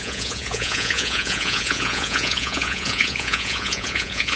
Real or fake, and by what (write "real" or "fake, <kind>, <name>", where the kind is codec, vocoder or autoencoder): fake, vocoder, Vocos